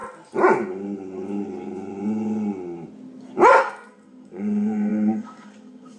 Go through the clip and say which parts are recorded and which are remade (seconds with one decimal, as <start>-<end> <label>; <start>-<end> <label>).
0.0-3.6 recorded; 3.6-6.0 remade